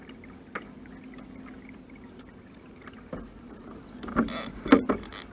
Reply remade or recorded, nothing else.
recorded